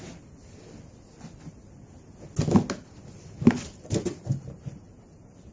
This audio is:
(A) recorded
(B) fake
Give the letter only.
A